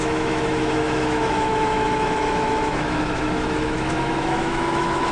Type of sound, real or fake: fake